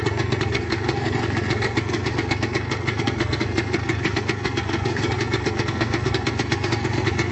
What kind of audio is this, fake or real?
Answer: fake